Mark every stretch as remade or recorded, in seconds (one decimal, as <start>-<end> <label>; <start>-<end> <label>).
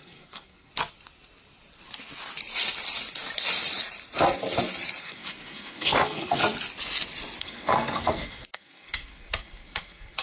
0.0-0.7 remade; 0.7-5.0 recorded; 5.0-6.4 remade; 6.4-7.4 recorded; 7.4-10.2 remade